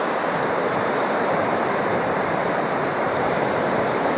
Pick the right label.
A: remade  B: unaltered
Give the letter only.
A